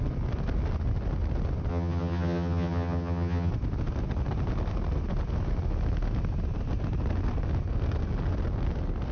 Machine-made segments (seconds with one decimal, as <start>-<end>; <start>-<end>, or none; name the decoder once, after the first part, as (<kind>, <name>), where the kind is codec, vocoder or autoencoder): 1.7-3.5 (vocoder, HiFi-GAN)